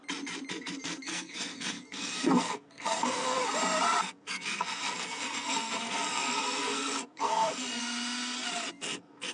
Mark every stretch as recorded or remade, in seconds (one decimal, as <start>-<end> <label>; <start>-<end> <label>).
0.0-0.5 recorded; 0.5-3.4 remade; 3.4-4.0 recorded; 4.0-7.8 remade; 7.8-8.7 recorded; 8.7-9.3 remade